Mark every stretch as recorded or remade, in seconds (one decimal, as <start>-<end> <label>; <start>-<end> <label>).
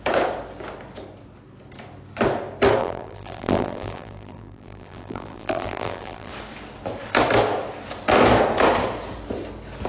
0.0-2.8 recorded; 2.8-6.3 remade; 6.3-9.9 recorded